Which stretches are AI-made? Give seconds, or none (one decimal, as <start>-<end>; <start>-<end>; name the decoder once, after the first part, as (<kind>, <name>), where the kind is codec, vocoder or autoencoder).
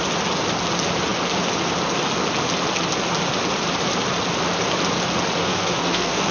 5.4-6.3 (codec, SNAC)